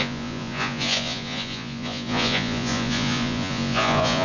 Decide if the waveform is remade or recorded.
remade